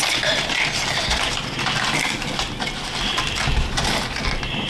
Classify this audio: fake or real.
real